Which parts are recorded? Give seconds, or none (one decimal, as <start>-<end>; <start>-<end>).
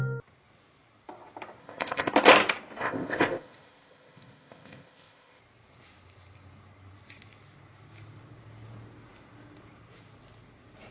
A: 0.0-1.6; 2.1-2.8; 5.4-10.9